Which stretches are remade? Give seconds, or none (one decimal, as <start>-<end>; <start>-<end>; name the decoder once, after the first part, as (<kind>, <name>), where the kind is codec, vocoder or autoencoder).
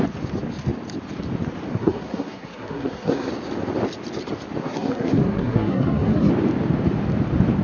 1.7-3.3 (codec, SNAC); 4.6-6.3